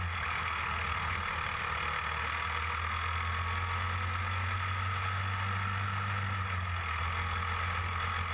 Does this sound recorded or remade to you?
recorded